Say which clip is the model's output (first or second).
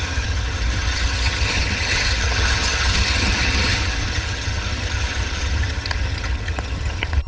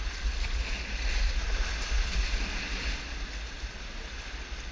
first